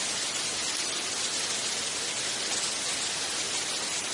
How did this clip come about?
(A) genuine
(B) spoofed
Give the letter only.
A